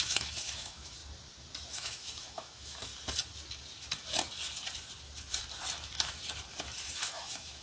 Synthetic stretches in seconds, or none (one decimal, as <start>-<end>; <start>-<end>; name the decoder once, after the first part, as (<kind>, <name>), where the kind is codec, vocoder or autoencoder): 0.0-1.0 (autoencoder, DAC-VAE); 1.7-2.9; 5.8-6.2; 7.0-7.6